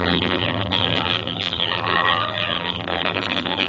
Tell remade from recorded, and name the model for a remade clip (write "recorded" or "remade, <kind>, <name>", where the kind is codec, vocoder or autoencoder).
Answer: remade, vocoder, BigVGAN v2